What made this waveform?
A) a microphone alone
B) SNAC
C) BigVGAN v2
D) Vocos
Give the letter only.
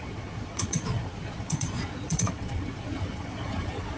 D